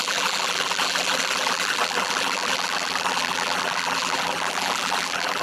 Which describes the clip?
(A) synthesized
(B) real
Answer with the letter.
A